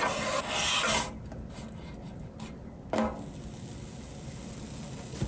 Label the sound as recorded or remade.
recorded